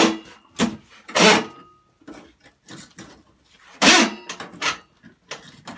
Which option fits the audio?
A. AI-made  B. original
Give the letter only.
B